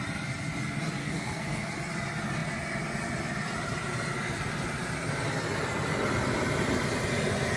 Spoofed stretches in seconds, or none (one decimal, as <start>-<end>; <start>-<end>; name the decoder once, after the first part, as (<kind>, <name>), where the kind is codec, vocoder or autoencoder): 1.0-1.7 (codec, SNAC)